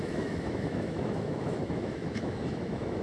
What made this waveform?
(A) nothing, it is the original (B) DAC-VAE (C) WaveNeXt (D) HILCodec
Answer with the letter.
B